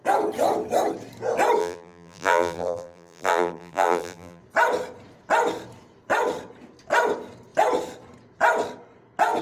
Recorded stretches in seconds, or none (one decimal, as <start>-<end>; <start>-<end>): 0.0-1.6; 4.4-9.4